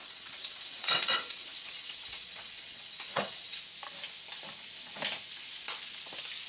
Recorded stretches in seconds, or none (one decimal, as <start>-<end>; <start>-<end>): 3.6-6.5